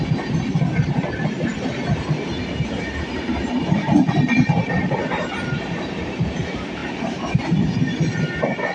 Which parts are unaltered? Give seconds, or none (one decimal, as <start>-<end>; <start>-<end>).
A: none